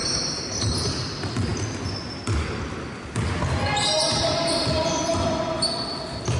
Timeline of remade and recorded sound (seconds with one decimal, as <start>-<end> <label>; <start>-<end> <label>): 0.0-6.4 recorded